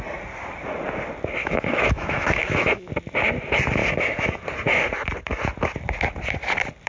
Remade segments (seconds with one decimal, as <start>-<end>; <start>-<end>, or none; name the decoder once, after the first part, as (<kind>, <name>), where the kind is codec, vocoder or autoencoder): 1.4-2.9 (autoencoder, DAC-VAE); 3.8-4.4